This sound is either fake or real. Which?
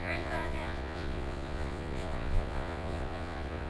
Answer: fake